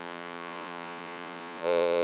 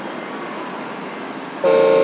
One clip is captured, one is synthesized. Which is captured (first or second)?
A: second